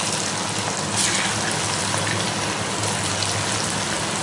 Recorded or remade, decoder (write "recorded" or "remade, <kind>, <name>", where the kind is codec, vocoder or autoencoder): recorded